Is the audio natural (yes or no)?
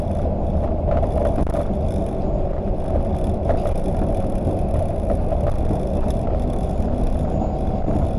yes